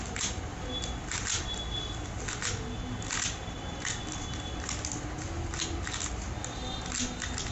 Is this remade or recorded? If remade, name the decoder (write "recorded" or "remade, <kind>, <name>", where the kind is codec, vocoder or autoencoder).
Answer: recorded